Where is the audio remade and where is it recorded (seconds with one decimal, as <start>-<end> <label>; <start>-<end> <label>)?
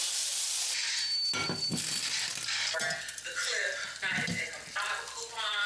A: 0.0-0.8 remade; 0.8-1.6 recorded; 1.6-5.7 remade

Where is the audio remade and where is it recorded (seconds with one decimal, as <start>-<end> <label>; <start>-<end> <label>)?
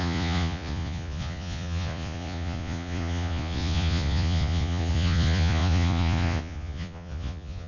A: 0.0-7.7 remade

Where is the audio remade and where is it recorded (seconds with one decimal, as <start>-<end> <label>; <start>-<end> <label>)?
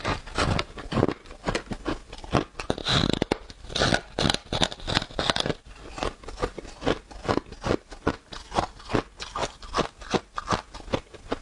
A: 0.0-11.4 recorded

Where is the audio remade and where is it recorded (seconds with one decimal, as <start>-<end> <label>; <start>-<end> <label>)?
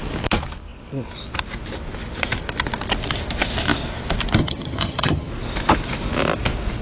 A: 0.0-4.4 recorded; 4.4-5.3 remade; 5.3-6.8 recorded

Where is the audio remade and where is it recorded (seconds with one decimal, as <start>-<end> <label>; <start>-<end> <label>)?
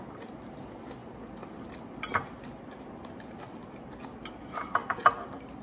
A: 0.0-5.6 recorded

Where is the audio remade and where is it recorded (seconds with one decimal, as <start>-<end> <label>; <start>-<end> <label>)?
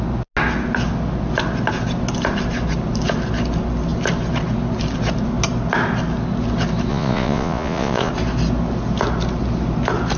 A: 0.0-6.9 recorded; 6.9-8.1 remade; 8.1-10.2 recorded